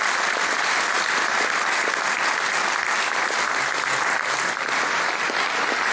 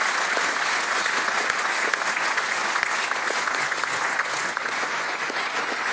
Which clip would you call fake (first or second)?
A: second